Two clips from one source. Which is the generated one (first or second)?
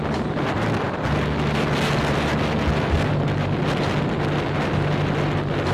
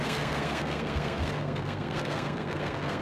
second